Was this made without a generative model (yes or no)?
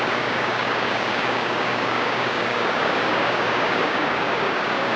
no